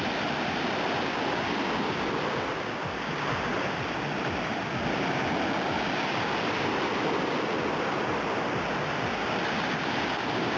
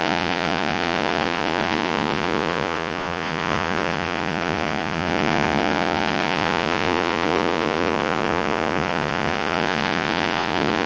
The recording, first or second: first